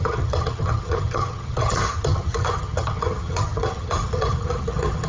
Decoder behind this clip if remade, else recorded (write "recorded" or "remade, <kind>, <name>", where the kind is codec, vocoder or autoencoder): remade, vocoder, HiFi-GAN